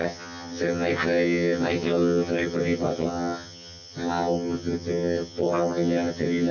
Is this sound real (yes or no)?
no